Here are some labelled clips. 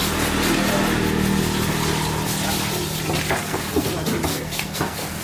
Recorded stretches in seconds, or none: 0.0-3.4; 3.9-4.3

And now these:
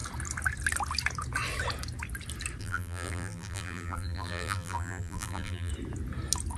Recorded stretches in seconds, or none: 0.0-2.6; 5.7-6.6